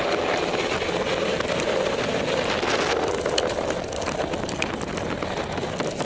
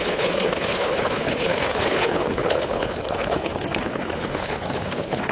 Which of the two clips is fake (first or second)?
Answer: second